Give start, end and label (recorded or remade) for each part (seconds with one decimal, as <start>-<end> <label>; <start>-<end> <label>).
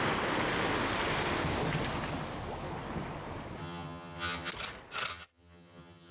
0.0-3.6 recorded; 3.6-4.5 remade; 4.5-5.1 recorded; 5.1-6.1 remade